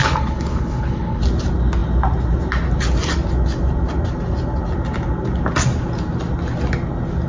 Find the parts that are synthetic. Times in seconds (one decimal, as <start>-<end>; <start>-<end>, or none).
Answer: 0.0-1.2